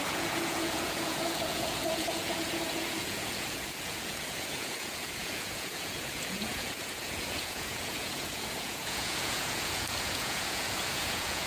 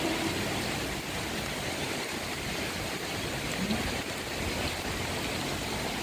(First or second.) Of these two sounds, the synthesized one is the first